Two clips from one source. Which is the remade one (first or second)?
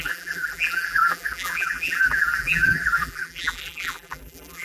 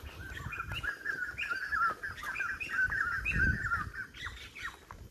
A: first